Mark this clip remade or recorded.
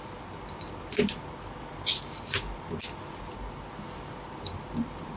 recorded